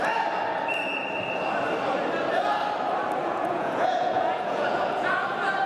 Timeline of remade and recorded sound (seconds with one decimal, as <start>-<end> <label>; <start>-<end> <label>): 0.0-3.2 recorded; 3.2-5.1 remade; 5.1-5.7 recorded